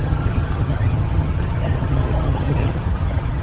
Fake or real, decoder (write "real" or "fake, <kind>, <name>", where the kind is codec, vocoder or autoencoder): fake, vocoder, HiFi-GAN